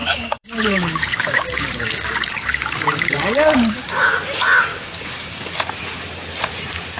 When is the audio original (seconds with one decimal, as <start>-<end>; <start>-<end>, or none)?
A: 4.2-4.7; 5.5-7.0